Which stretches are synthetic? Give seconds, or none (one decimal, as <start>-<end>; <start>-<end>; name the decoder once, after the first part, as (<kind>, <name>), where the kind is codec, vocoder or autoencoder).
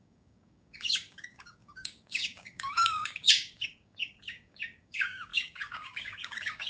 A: 0.0-6.7 (codec, DAC)